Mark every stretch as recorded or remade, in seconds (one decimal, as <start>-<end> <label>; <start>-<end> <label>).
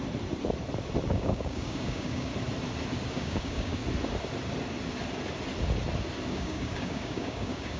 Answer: 0.0-1.1 recorded; 1.1-2.3 remade; 2.3-3.1 recorded; 3.1-3.8 remade; 3.8-6.3 recorded; 6.3-7.8 remade